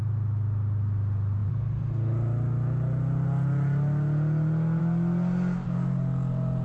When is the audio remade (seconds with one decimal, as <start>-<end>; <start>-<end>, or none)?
none

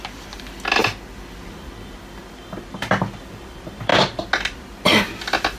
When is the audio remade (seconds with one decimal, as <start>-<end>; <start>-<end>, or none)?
none

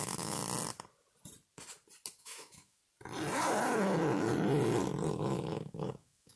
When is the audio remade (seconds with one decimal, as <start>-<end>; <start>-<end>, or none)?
0.0-0.4; 2.2-2.8; 5.1-6.4

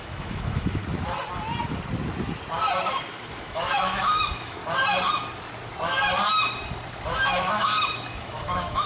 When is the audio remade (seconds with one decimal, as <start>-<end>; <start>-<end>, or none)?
0.0-0.8; 2.8-4.6; 7.2-8.9

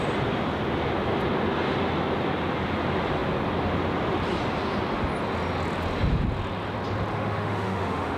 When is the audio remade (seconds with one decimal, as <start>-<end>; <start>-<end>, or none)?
7.1-8.2

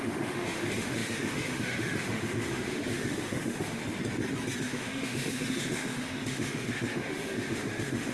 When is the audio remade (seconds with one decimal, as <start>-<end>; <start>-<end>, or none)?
0.0-3.8; 4.6-8.1

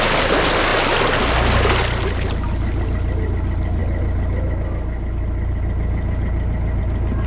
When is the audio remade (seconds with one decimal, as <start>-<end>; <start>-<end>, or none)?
none

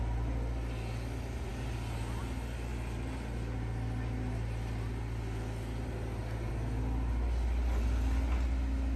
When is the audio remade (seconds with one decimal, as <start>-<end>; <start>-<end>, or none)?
none